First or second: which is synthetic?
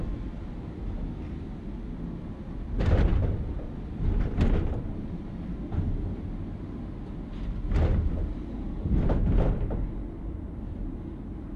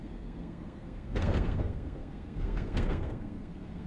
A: second